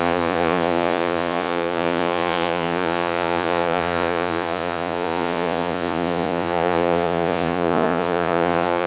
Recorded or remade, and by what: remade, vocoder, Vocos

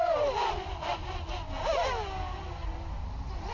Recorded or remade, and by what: recorded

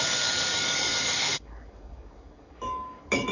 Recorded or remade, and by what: remade, codec, DAC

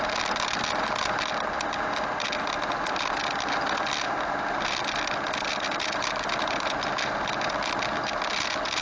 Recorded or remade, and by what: recorded